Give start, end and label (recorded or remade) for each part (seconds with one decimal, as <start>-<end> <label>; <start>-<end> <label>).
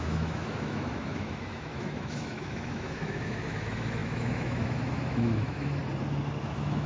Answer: 0.0-5.8 remade; 5.8-6.4 recorded; 6.4-6.9 remade